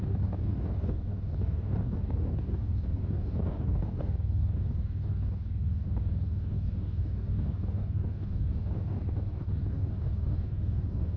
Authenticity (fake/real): fake